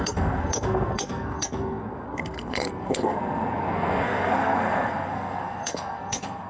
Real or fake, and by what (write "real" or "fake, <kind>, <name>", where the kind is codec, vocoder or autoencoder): fake, codec, SNAC